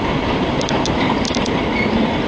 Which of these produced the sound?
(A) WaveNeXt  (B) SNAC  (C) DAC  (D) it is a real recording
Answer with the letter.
D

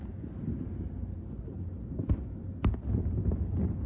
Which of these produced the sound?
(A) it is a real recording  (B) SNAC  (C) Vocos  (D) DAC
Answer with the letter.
A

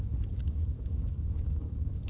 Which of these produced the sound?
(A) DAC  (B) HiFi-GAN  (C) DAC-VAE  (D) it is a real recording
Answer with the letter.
A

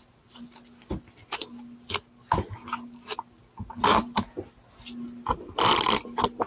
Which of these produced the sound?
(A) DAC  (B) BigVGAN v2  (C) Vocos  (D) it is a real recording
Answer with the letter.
D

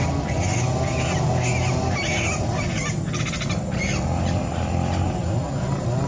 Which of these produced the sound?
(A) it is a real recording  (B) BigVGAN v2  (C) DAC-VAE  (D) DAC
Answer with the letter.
A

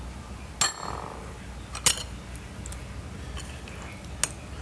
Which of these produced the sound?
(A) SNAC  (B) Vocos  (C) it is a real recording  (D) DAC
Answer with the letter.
C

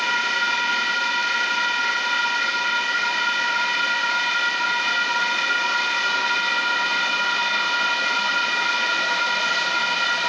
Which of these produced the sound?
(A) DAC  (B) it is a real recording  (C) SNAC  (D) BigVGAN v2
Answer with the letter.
B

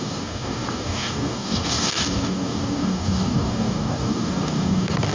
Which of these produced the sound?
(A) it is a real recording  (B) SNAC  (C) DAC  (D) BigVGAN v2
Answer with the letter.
C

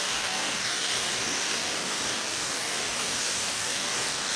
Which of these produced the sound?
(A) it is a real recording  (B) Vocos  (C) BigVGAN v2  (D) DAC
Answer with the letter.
D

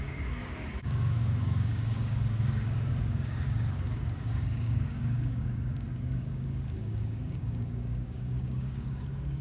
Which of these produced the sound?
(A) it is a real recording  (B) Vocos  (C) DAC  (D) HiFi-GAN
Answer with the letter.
C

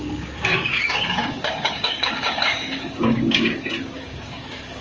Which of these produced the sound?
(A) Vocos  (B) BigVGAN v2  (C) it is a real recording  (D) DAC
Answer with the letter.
D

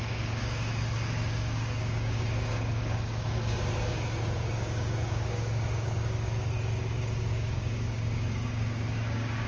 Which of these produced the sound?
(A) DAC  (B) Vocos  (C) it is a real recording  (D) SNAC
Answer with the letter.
A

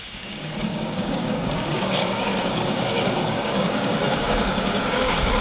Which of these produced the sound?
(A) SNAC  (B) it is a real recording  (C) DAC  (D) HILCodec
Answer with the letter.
C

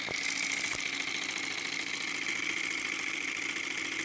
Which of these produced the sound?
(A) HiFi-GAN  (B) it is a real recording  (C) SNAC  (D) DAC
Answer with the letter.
B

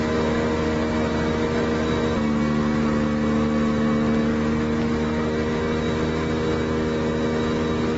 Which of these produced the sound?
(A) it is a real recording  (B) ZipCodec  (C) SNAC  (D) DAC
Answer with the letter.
A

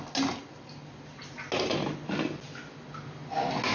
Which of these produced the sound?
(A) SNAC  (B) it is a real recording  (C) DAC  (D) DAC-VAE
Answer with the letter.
B